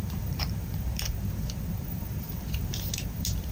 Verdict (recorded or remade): remade